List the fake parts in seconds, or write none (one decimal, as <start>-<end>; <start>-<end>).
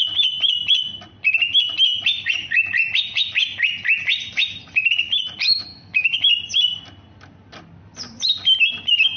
5.7-6.2